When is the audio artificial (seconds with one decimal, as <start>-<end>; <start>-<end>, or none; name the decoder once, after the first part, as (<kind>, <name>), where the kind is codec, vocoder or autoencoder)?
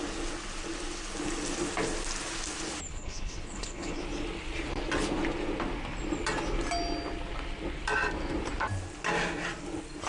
2.9-4.0 (codec, HILCodec)